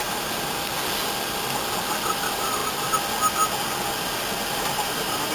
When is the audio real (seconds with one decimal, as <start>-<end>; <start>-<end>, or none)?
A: 0.7-2.1; 2.6-4.5